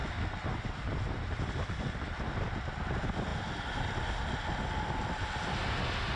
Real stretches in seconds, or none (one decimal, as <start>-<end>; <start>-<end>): 0.0-6.2